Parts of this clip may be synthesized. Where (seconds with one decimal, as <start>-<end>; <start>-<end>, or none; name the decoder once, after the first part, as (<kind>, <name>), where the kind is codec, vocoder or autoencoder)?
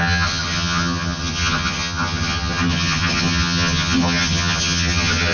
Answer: 0.0-5.3 (vocoder, HiFi-GAN)